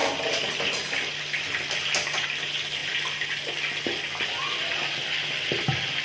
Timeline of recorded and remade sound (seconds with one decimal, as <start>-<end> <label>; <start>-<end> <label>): 0.0-6.0 recorded